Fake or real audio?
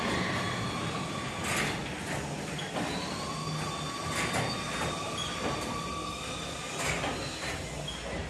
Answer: real